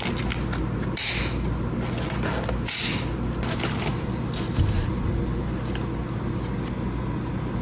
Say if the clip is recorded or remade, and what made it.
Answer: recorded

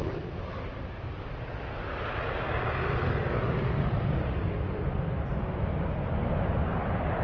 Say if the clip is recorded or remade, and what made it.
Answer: recorded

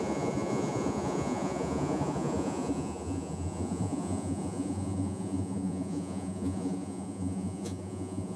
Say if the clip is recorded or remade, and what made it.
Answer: remade, vocoder, Vocos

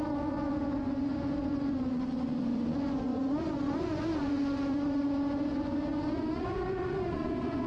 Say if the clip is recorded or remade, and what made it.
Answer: remade, vocoder, Vocos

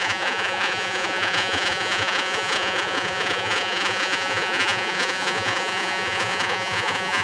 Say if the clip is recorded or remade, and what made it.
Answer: remade, vocoder, Vocos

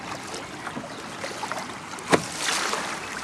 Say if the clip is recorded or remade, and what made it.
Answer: recorded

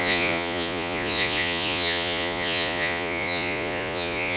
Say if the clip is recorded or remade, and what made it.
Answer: remade, vocoder, Vocos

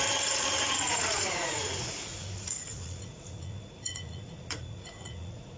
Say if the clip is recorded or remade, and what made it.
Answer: remade, vocoder, Vocos